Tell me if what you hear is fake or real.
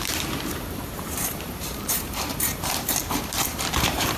fake